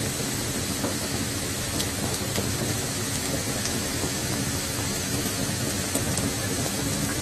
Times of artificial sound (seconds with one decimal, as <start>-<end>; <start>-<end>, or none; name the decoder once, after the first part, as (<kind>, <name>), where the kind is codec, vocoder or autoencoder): 0.7-2.2 (autoencoder, DAC-VAE); 2.7-7.2